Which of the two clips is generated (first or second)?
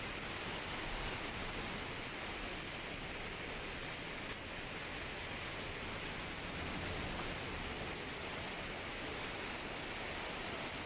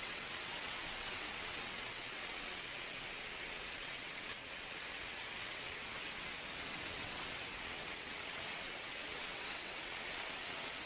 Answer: second